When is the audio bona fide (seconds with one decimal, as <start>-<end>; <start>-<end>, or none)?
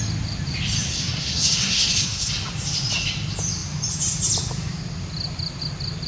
0.0-0.9; 2.3-6.1